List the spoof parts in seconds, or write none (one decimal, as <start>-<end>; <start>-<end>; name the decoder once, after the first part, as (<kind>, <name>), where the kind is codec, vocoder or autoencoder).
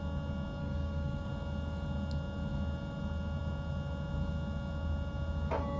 0.6-1.3 (codec, DAC)